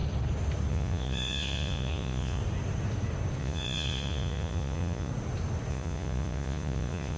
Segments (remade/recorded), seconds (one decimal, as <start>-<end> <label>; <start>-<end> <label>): 0.0-0.7 recorded; 0.7-2.4 remade; 2.4-3.4 recorded; 3.4-5.1 remade; 5.1-5.7 recorded; 5.7-7.2 remade